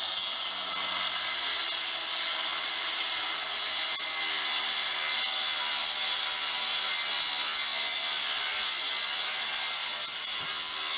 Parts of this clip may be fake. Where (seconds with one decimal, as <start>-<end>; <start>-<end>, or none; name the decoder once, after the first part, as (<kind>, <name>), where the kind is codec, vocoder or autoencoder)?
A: none